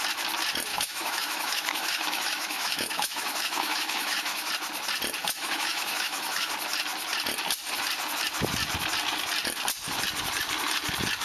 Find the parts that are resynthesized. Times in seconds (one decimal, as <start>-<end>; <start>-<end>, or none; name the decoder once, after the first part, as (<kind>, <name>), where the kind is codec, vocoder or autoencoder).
0.7-4.5 (autoencoder, DAC-VAE); 5.2-6.5